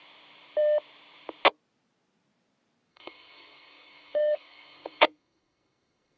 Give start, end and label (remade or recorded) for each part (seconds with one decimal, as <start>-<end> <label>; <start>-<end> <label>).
0.0-2.9 recorded; 2.9-6.2 remade

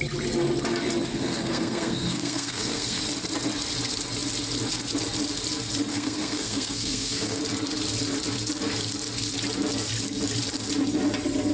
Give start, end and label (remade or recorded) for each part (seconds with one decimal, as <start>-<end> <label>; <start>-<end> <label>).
0.0-1.1 recorded; 1.1-3.0 remade; 3.0-5.9 recorded; 5.9-7.4 remade; 7.4-11.5 recorded

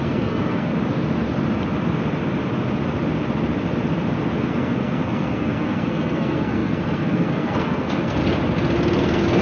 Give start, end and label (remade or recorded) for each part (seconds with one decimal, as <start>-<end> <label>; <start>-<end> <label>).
0.0-0.7 remade; 0.7-4.4 recorded; 4.4-8.2 remade; 8.2-8.8 recorded; 8.8-9.4 remade

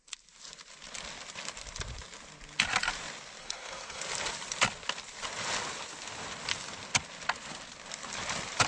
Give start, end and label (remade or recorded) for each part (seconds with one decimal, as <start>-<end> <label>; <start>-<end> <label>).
0.0-3.4 recorded; 3.4-4.0 remade; 4.0-8.7 recorded

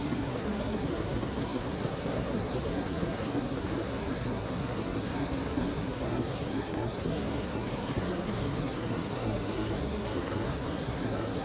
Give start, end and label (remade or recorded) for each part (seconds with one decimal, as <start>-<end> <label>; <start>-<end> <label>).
0.0-11.4 remade

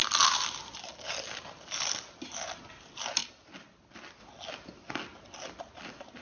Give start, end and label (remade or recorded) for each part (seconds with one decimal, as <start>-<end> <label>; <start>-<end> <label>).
0.0-6.2 recorded